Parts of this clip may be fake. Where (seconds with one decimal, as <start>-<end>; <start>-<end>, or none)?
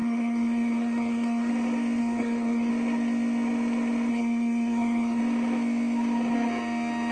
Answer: 0.0-1.5; 2.0-2.7; 4.1-5.2